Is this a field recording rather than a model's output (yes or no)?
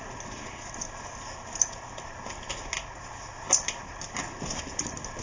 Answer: yes